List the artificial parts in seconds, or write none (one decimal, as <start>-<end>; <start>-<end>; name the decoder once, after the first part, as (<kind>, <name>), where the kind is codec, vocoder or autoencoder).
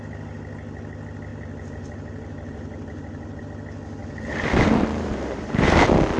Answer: 1.3-3.4 (vocoder, BigVGAN v2); 4.0-5.8